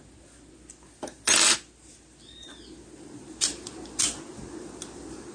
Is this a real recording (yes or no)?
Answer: yes